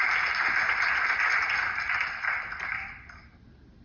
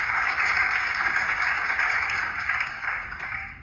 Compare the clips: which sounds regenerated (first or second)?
second